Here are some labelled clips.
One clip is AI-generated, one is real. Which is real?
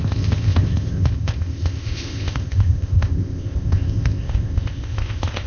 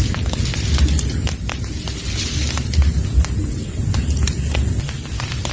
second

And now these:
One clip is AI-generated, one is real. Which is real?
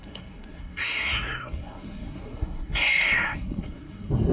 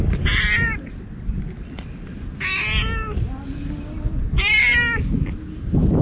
second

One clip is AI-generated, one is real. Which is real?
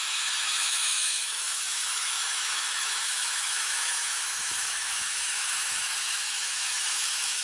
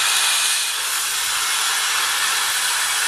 second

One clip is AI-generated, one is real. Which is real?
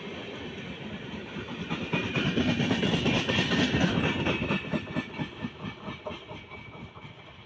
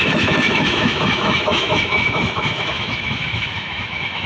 first